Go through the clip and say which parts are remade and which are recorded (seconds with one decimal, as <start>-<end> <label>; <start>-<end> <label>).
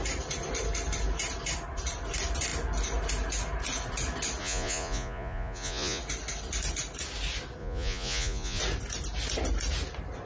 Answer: 0.0-4.4 recorded; 4.4-6.0 remade; 6.0-7.6 recorded; 7.6-8.6 remade; 8.6-10.3 recorded